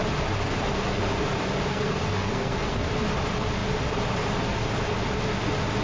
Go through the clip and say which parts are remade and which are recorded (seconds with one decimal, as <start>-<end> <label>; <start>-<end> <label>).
0.0-1.7 recorded; 1.7-2.9 remade; 2.9-5.8 recorded